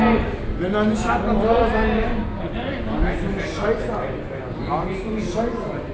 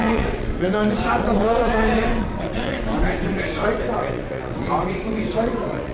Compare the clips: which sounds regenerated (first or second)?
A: second